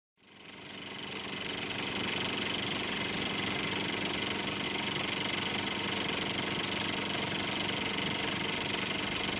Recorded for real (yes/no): yes